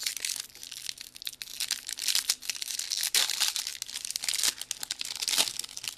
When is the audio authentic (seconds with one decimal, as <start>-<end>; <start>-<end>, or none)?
0.0-6.0